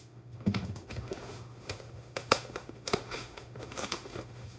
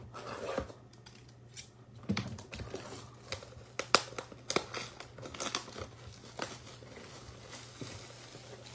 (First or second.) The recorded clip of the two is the second